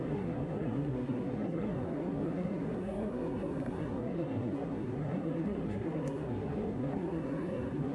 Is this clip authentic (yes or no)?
no